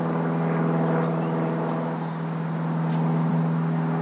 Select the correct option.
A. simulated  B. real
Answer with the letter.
B